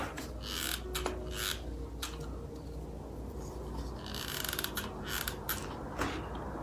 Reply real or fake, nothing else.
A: real